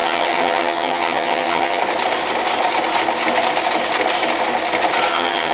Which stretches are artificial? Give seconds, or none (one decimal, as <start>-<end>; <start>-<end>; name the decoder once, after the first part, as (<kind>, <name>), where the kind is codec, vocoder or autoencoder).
0.0-1.8 (vocoder, HiFi-GAN); 5.1-5.5